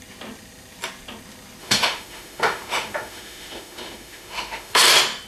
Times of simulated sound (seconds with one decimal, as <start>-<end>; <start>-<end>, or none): 1.6-4.8